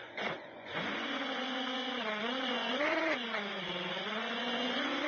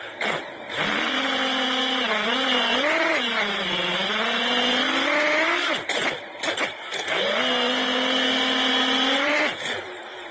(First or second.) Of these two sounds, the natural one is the second